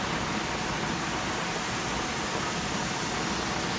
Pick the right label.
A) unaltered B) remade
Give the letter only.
A